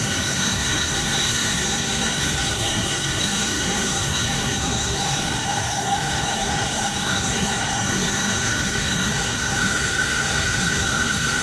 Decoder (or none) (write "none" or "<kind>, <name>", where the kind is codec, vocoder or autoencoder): codec, SNAC